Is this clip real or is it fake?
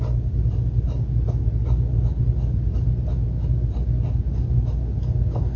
real